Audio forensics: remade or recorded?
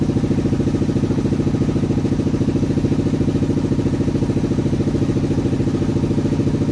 recorded